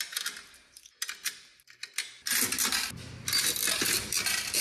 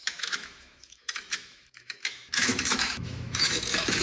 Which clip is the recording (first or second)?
first